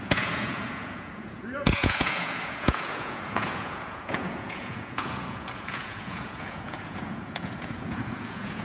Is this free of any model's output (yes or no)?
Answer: no